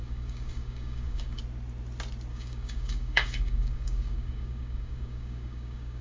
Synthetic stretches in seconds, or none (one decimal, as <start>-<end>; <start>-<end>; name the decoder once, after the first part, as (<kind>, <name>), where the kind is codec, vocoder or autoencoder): 0.0-1.4 (codec, DAC); 2.3-6.0